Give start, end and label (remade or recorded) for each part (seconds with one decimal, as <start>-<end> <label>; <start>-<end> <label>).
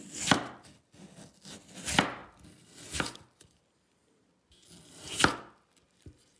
0.0-6.4 recorded